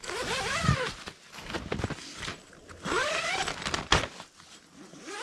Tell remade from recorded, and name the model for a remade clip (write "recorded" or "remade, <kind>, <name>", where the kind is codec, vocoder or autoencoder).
recorded